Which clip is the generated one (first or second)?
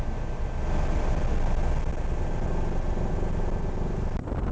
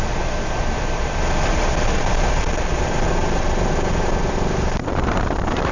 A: second